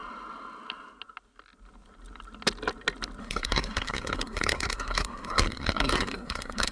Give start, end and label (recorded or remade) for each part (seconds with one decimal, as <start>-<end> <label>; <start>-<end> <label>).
0.0-3.2 recorded; 3.2-6.7 remade